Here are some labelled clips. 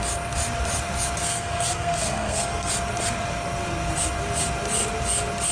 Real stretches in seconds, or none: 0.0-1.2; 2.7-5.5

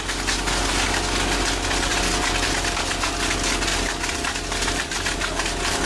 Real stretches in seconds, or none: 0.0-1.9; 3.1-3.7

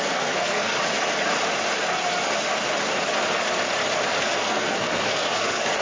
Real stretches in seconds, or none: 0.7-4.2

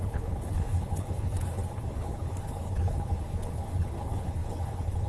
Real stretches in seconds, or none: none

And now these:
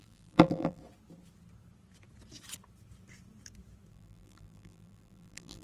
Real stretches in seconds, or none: 0.8-3.9

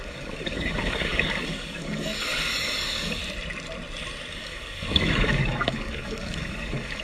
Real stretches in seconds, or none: 3.2-4.3